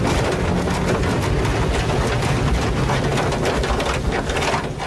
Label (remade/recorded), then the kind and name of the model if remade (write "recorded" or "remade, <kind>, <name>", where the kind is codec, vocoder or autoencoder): recorded